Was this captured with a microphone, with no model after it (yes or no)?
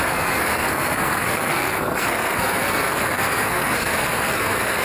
no